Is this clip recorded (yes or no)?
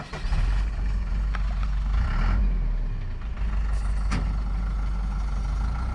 yes